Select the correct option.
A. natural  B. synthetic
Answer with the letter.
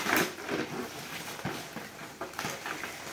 A